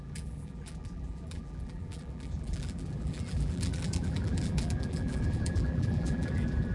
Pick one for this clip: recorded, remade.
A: remade